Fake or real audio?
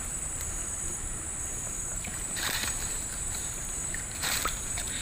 fake